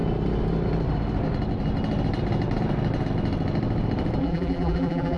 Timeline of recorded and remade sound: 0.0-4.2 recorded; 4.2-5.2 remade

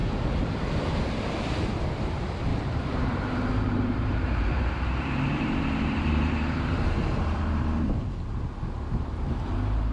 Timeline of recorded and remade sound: 0.0-1.7 remade; 1.7-2.5 recorded; 2.5-7.4 remade; 7.4-9.9 recorded

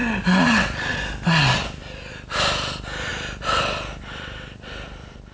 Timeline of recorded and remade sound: 0.0-5.3 recorded

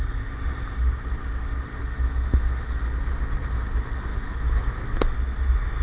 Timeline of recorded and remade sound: 0.0-1.8 recorded; 1.8-2.8 remade; 2.8-4.1 recorded; 4.1-4.6 remade; 4.6-5.8 recorded